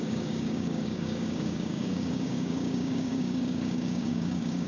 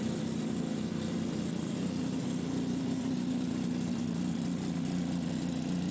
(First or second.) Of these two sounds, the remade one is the first